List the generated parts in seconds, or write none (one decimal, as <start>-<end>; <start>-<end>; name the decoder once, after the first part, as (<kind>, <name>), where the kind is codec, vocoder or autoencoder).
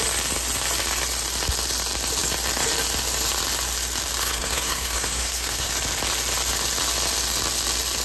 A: 4.2-5.7 (codec, SNAC)